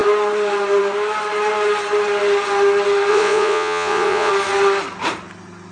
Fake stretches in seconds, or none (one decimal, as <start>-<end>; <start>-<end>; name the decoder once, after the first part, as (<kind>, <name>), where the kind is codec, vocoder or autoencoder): 3.1-4.3 (vocoder, Vocos)